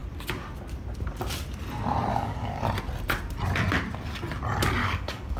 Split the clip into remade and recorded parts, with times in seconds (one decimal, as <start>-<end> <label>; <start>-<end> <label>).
0.0-2.1 recorded; 2.1-2.6 remade; 2.6-4.8 recorded; 4.8-5.4 remade